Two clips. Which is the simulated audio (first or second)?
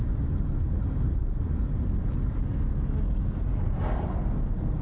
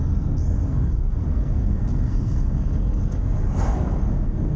second